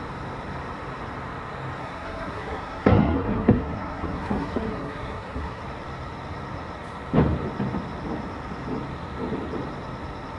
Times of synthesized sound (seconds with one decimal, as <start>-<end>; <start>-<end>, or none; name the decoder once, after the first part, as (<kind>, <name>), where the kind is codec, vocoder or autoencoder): 1.8-5.6 (codec, SNAC)